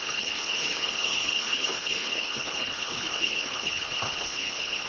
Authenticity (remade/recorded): remade